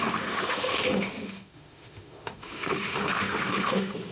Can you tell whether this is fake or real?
fake